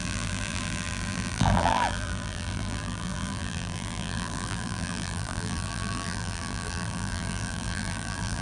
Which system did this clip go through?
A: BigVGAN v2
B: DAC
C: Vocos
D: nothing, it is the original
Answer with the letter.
A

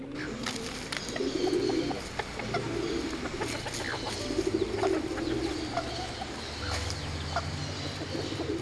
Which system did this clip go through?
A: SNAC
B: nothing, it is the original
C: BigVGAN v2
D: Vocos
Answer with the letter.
B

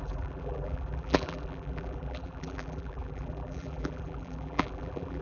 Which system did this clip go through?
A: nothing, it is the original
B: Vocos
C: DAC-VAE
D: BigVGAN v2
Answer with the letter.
D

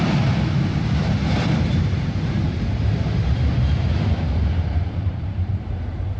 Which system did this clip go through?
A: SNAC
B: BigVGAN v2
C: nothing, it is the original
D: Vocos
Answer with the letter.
B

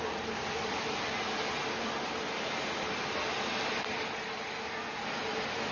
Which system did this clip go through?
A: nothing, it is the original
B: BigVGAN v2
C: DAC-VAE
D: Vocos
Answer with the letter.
A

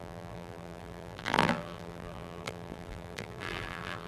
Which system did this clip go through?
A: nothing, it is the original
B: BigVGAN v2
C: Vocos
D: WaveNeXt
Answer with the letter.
B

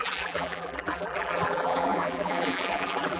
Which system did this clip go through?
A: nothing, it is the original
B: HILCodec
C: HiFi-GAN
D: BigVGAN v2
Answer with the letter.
D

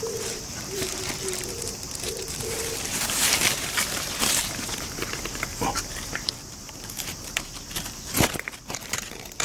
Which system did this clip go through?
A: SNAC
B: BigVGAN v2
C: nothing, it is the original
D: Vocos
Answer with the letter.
B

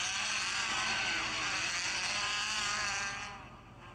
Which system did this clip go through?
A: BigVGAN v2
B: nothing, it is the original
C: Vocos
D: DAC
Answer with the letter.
B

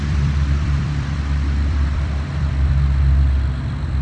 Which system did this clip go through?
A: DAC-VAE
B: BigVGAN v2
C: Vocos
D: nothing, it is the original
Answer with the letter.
B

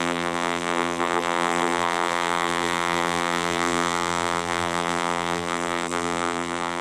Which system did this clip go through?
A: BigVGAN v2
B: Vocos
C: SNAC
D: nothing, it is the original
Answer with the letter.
A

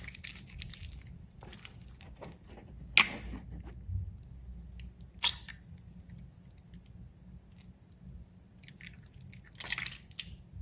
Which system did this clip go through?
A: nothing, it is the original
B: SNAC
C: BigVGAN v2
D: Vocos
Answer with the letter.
A